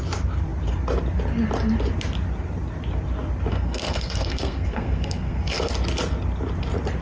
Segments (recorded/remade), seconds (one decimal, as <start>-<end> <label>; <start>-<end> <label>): 0.0-3.5 recorded; 3.5-5.7 remade; 5.7-7.0 recorded